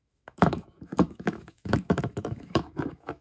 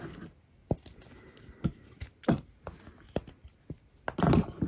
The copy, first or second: first